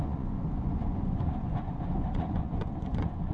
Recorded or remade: remade